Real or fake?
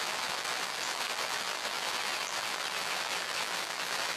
fake